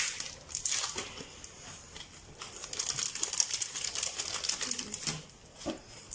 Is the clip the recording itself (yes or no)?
yes